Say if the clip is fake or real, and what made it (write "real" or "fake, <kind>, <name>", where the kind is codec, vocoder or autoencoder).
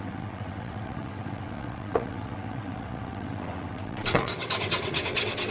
fake, vocoder, WaveNeXt